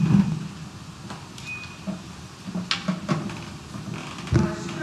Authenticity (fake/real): real